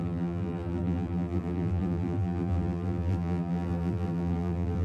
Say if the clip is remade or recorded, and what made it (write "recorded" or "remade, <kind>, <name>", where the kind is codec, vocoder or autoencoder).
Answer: remade, vocoder, BigVGAN v2